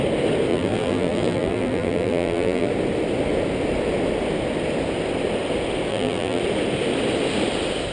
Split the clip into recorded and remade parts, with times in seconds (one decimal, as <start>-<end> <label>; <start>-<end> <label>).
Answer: 0.0-0.5 recorded; 0.5-2.7 remade; 2.7-5.9 recorded; 5.9-6.4 remade; 6.4-7.9 recorded